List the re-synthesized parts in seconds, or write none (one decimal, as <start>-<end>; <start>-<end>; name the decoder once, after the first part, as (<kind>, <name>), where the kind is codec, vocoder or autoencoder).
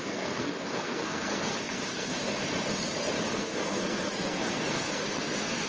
0.0-2.1 (codec, SNAC); 3.3-5.7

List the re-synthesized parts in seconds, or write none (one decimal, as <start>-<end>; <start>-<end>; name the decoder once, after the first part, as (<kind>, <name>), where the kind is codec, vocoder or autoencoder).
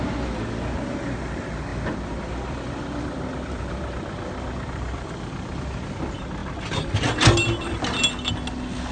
1.7-6.0 (vocoder, BigVGAN v2)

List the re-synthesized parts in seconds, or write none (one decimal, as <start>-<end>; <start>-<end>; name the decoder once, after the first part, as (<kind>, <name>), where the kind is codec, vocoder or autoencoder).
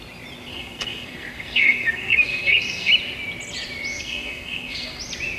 0.5-2.9 (codec, SNAC); 3.9-5.0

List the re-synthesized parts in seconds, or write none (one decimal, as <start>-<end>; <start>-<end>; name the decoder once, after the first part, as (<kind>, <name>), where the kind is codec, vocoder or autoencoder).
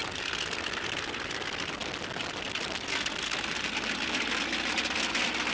0.0-1.1 (vocoder, BigVGAN v2)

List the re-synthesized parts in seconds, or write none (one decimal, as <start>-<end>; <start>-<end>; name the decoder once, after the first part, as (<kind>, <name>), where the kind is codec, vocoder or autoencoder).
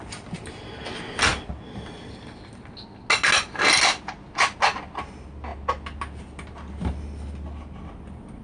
none